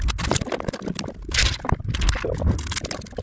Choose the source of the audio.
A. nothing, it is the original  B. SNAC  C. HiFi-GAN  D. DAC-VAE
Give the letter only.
A